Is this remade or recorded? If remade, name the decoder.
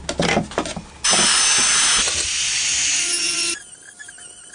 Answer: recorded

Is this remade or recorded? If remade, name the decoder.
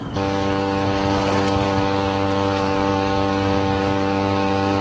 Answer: remade, codec, DAC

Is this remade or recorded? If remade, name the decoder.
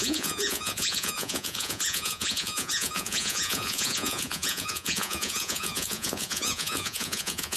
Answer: remade, vocoder, Vocos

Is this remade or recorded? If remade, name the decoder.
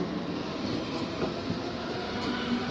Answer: recorded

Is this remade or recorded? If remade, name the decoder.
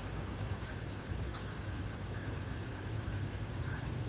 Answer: remade, codec, DAC